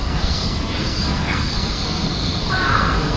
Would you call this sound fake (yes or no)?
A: yes